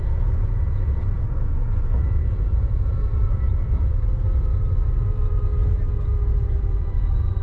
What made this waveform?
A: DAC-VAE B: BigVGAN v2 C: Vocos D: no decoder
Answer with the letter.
C